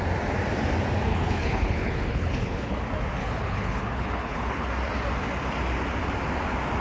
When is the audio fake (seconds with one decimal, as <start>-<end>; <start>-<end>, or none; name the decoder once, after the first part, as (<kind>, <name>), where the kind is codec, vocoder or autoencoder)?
1.1-2.8 (codec, HILCodec); 3.2-4.7